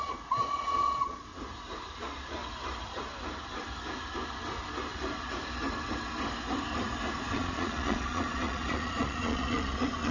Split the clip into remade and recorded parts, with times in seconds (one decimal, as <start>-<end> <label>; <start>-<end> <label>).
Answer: 0.0-1.3 remade; 1.3-2.0 recorded; 2.0-2.4 remade; 2.4-7.3 recorded; 7.3-10.1 remade

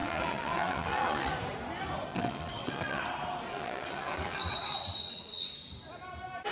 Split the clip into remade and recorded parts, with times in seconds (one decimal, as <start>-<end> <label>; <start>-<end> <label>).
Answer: 0.0-1.3 remade; 1.3-2.1 recorded; 2.1-3.0 remade; 3.0-3.5 recorded; 3.5-5.5 remade; 5.5-6.5 recorded

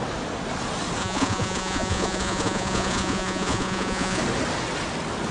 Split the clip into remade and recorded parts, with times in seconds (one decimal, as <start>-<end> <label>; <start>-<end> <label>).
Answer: 0.0-1.0 recorded; 1.0-4.2 remade; 4.2-5.3 recorded

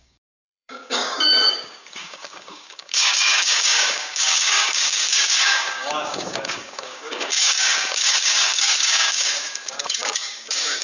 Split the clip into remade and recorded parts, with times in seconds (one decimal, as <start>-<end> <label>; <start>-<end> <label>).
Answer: 0.0-10.8 remade

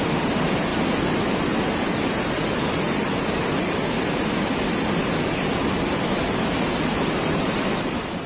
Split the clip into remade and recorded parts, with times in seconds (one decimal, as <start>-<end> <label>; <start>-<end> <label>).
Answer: 0.0-8.3 recorded

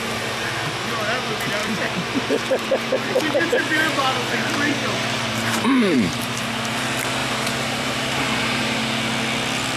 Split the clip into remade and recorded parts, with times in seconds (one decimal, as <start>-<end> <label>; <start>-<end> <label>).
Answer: 0.0-1.6 recorded; 1.6-6.5 remade; 6.5-7.2 recorded; 7.2-8.8 remade; 8.8-9.8 recorded